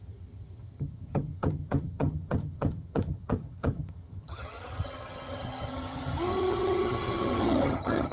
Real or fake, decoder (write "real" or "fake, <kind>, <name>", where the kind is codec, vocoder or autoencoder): fake, vocoder, HiFi-GAN